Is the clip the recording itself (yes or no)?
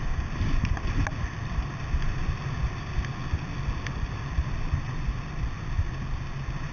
yes